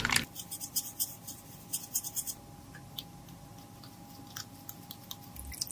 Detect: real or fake real